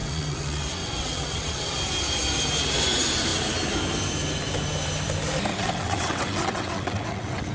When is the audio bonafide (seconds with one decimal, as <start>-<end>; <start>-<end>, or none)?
1.7-5.5